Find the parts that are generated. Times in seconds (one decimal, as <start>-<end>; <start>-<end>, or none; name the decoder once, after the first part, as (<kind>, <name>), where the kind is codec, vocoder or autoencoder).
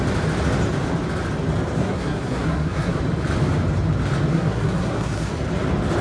1.8-3.0 (codec, SNAC); 4.3-5.3